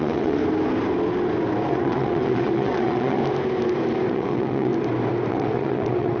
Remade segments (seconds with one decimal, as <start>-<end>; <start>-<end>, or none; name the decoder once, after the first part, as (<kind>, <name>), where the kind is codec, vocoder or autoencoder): 0.0-0.4 (vocoder, WaveNeXt); 1.7-3.2; 4.1-4.7; 5.3-6.2